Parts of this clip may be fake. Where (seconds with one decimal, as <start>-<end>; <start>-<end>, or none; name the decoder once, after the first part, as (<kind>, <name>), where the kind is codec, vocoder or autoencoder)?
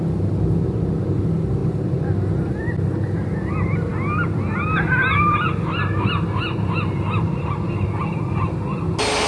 none